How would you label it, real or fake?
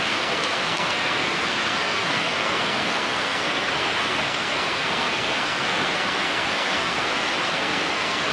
fake